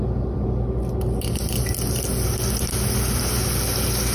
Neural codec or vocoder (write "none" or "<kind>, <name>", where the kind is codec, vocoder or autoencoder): none